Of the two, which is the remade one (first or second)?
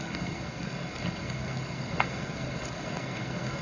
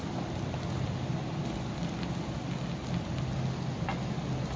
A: first